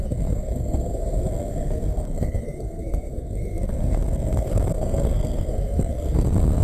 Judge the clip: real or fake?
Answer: fake